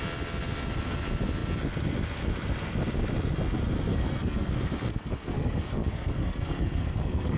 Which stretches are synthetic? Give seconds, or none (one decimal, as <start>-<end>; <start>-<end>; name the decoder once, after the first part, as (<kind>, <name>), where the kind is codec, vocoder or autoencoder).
3.9-4.5 (codec, SNAC); 4.9-7.4